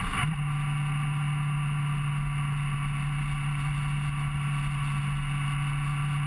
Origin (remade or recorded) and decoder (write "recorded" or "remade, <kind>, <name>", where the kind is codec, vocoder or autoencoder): recorded